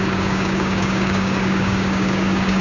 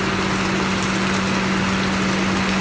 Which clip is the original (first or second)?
second